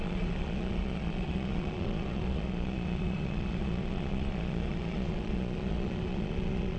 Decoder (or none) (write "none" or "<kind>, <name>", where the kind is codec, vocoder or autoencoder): vocoder, Vocos